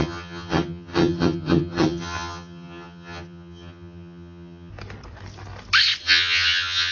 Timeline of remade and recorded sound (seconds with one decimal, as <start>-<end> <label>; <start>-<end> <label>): 0.0-4.7 remade; 4.7-6.0 recorded; 6.0-6.9 remade